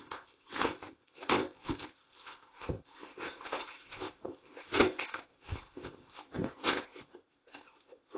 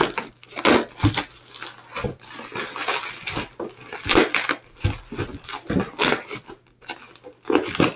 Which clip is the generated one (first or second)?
first